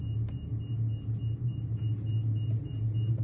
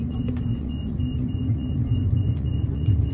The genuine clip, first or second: first